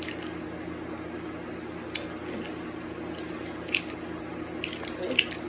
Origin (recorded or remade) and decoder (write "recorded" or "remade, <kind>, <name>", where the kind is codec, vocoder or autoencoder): recorded